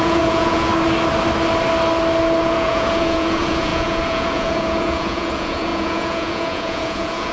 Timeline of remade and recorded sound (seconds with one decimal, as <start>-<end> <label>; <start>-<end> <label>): 0.0-0.7 remade; 0.7-2.4 recorded; 2.4-7.3 remade